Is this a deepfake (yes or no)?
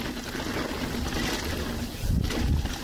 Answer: no